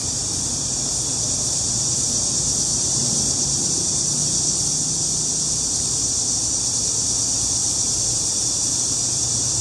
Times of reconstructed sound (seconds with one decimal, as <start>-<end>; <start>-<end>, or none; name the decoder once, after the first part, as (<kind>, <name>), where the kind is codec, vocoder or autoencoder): 0.0-4.2 (vocoder, BigVGAN v2); 6.8-9.6

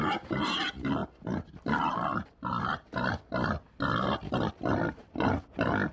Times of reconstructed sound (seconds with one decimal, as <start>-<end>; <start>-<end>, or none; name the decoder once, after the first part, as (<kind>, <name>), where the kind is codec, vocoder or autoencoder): none

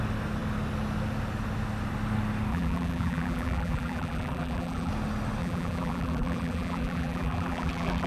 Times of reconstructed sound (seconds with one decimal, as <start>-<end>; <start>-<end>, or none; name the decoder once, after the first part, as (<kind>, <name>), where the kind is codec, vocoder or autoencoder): 2.5-4.9 (vocoder, BigVGAN v2); 5.4-8.1

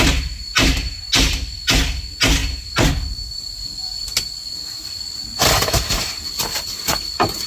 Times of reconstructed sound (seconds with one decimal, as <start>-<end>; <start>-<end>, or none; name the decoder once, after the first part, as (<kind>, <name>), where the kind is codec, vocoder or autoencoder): none

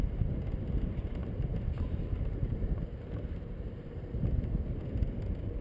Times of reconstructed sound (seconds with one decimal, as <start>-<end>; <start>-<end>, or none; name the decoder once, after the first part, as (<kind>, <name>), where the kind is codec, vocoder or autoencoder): 1.2-4.6 (vocoder, BigVGAN v2)

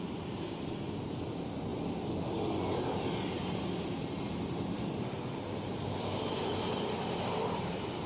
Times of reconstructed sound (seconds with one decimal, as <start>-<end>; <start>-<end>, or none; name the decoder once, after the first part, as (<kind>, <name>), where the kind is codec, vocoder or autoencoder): 0.0-8.1 (vocoder, BigVGAN v2)

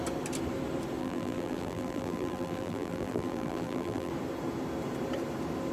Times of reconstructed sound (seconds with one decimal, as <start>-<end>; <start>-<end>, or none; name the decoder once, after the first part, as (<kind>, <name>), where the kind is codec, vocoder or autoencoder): 1.0-4.1 (vocoder, BigVGAN v2)